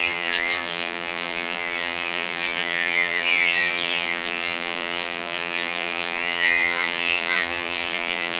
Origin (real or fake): fake